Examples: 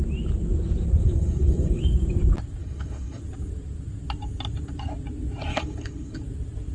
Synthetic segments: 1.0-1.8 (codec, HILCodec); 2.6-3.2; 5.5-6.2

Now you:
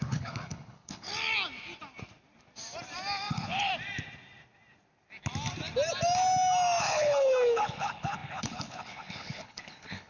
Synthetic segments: 0.0-1.1 (codec, HILCodec); 3.3-3.7; 6.8-10.1

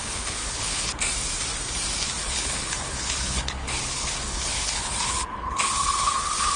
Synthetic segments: 0.0-0.9 (codec, HILCodec); 2.2-6.6

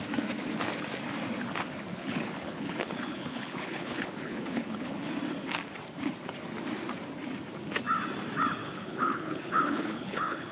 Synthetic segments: 1.9-5.1 (codec, HILCodec); 8.6-10.5

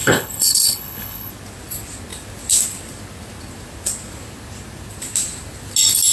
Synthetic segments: 0.0-1.3 (codec, HILCodec)

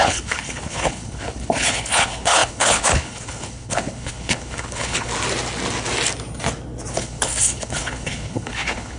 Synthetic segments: 0.0-5.1 (codec, HILCodec); 6.9-9.0

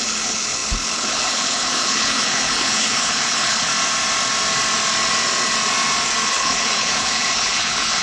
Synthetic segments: 0.0-3.7 (codec, HILCodec); 6.3-8.0

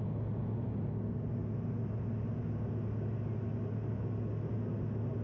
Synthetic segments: none